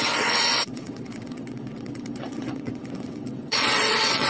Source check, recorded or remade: remade